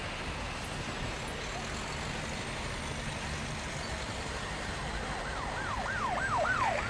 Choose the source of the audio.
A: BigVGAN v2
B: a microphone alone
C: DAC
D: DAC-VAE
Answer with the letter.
B